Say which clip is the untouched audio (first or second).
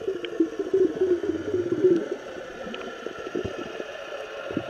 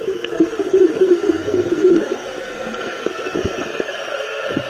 first